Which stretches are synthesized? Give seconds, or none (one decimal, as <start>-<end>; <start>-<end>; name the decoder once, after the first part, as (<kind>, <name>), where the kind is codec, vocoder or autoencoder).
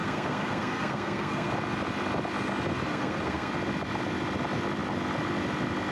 0.0-1.5 (codec, SNAC); 2.9-3.5